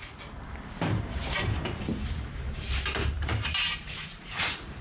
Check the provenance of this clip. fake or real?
fake